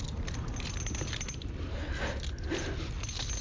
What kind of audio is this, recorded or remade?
recorded